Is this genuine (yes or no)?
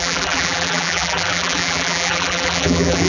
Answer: no